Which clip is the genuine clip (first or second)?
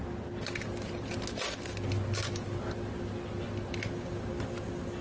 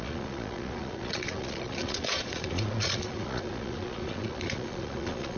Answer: first